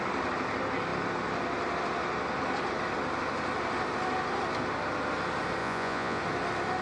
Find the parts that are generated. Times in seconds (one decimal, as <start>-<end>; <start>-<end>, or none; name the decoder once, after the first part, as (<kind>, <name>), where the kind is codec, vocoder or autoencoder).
5.6-6.2 (vocoder, Vocos)